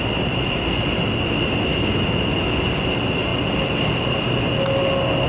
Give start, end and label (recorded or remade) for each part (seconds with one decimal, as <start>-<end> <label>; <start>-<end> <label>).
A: 0.0-1.7 recorded; 1.7-2.6 remade; 2.6-5.3 recorded